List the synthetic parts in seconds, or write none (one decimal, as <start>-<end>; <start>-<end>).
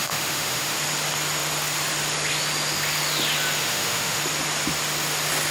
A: 0.0-0.8; 3.6-4.2